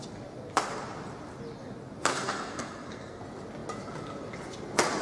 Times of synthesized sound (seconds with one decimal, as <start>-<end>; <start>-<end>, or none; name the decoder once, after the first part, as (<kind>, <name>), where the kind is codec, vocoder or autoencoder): 2.1-3.2 (codec, SNAC)